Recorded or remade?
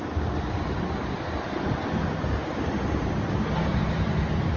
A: remade